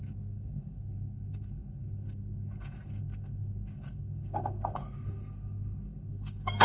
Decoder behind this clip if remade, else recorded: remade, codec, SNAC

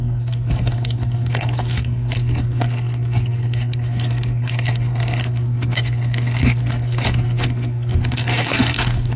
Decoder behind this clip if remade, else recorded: remade, codec, SNAC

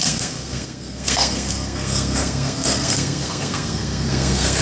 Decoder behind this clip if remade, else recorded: remade, codec, SNAC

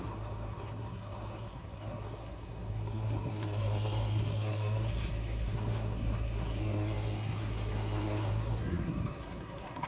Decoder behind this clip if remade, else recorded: remade, codec, SNAC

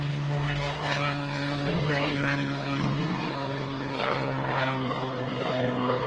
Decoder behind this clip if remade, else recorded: remade, codec, SNAC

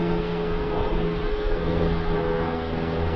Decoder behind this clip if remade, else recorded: remade, codec, SNAC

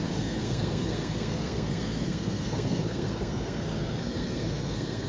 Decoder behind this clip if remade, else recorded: remade, codec, SNAC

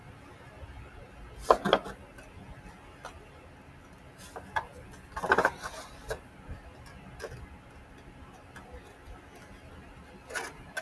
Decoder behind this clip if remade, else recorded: recorded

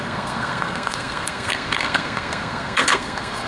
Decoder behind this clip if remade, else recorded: remade, codec, SNAC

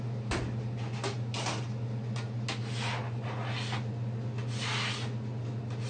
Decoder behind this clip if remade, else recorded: recorded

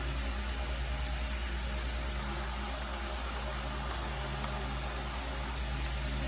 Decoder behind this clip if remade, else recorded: recorded